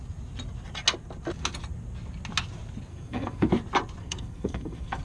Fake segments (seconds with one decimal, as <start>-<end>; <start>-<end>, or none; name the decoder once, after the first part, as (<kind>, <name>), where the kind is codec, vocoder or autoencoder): 2.9-3.5 (codec, SNAC); 4.0-5.0